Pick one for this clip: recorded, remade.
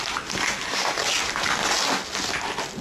recorded